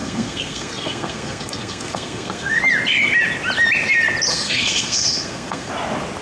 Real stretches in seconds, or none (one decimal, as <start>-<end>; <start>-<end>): 2.6-4.3; 5.7-6.2